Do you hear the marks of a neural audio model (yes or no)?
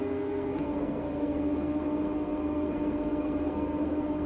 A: yes